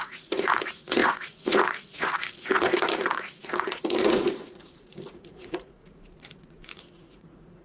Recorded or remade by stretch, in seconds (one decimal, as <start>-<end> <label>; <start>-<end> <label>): 0.0-7.6 remade

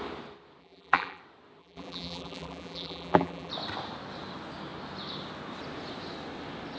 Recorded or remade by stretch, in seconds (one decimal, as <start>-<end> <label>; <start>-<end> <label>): 0.0-0.6 recorded; 0.6-1.2 remade; 1.2-1.6 recorded; 1.6-3.5 remade; 3.5-6.8 recorded